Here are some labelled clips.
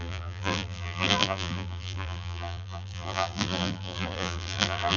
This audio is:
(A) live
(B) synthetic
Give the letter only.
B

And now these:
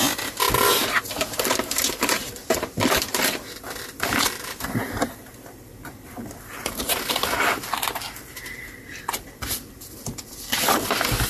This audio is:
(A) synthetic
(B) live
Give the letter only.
A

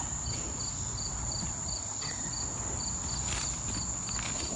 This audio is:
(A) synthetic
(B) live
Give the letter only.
B